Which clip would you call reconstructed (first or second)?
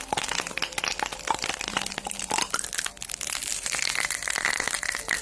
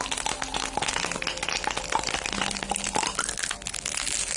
first